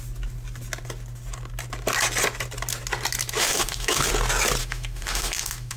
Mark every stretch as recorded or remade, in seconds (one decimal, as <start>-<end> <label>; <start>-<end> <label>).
0.0-3.4 recorded; 3.4-4.1 remade; 4.1-4.6 recorded; 4.6-5.8 remade